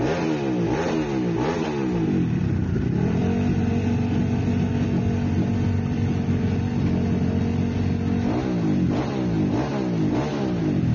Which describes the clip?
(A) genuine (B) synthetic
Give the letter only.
A